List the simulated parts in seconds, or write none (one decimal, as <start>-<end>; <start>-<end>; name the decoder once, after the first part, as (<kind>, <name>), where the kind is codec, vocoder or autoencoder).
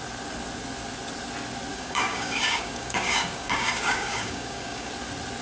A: 1.7-4.9 (codec, DAC)